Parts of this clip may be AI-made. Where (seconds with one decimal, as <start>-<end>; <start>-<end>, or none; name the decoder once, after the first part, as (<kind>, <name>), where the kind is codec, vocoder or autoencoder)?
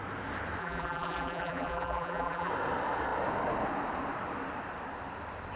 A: 0.6-2.5 (vocoder, BigVGAN v2)